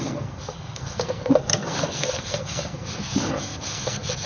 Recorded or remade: remade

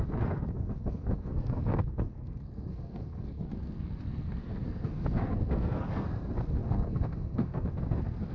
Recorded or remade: remade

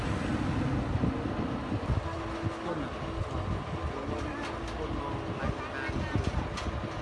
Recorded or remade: recorded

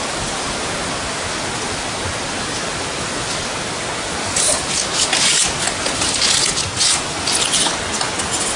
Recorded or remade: recorded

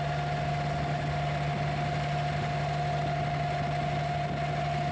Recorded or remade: recorded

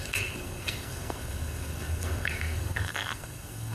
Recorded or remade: remade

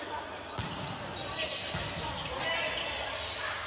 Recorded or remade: recorded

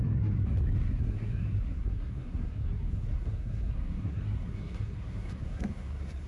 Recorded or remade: remade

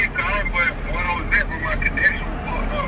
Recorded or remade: recorded